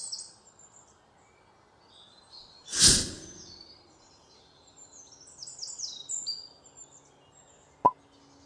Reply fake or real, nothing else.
real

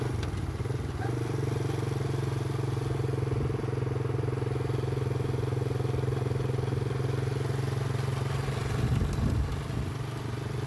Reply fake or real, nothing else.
real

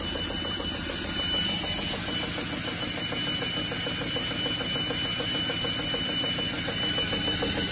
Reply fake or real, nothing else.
real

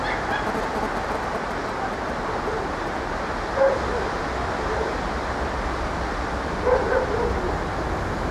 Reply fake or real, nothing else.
real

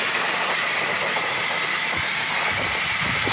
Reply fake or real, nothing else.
real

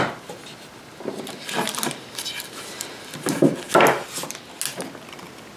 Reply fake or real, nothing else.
real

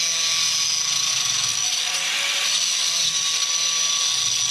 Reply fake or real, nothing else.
real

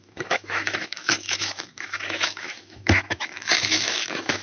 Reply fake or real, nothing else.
fake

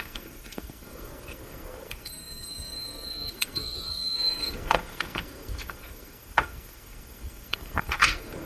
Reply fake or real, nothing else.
fake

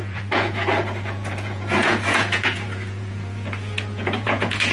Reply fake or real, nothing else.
fake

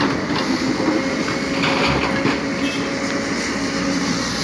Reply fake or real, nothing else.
real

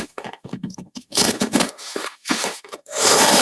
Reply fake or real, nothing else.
fake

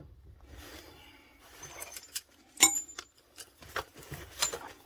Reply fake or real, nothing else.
fake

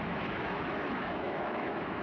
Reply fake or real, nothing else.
fake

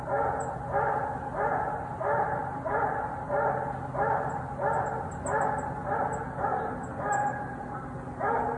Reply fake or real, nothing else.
real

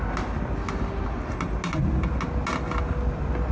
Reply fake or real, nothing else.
real